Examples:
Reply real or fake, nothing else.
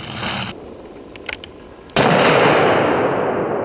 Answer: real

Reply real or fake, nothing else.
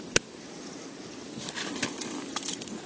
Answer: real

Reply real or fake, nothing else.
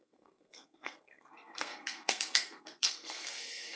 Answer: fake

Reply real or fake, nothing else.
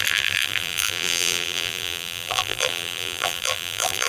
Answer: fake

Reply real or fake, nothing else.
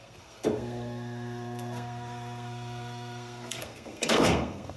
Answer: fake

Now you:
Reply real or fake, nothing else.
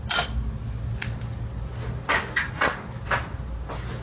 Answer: real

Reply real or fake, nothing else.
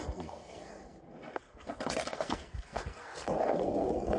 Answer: fake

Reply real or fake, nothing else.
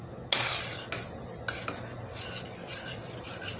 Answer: real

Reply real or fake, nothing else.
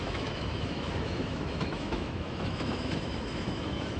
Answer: fake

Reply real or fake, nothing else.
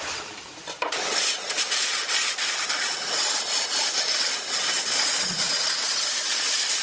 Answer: real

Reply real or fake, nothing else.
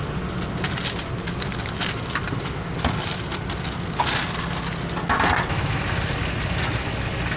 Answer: real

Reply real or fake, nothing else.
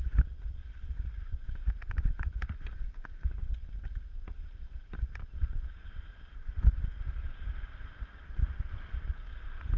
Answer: real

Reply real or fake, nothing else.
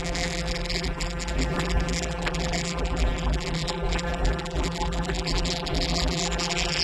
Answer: fake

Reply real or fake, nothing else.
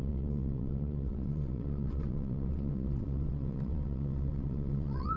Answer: fake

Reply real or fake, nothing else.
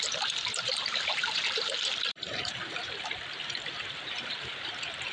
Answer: fake